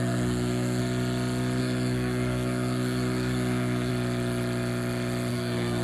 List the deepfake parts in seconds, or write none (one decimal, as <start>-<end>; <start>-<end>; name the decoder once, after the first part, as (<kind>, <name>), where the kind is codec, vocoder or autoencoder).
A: 0.0-0.8 (codec, SNAC); 1.6-3.9; 5.3-5.8